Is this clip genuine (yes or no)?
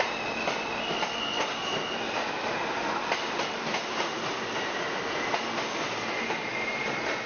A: yes